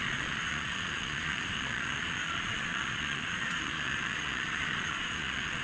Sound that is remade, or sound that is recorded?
remade